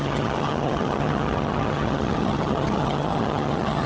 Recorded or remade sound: remade